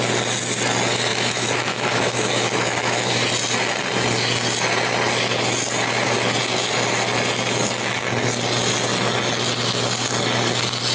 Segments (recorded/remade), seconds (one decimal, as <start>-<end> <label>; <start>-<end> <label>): 0.0-1.1 recorded; 1.1-3.1 remade; 3.1-10.9 recorded